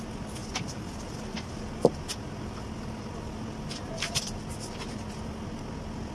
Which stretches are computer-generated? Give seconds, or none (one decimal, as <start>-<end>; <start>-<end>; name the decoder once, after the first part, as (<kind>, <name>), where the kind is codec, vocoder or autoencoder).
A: 0.4-1.5 (vocoder, BigVGAN v2); 2.1-3.9